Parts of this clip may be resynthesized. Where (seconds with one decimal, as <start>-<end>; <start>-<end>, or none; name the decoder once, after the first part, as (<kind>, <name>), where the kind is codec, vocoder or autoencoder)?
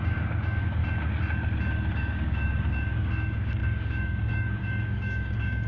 0.0-0.8 (codec, DAC); 1.9-5.7